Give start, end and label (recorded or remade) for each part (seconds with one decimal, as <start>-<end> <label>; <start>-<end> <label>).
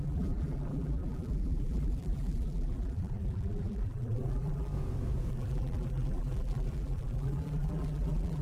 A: 0.0-4.7 remade; 4.7-5.3 recorded; 5.3-8.4 remade